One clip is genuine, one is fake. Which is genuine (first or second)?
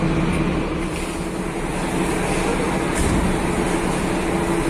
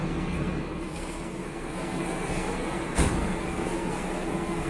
first